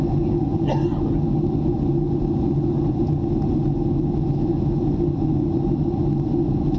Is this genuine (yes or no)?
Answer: yes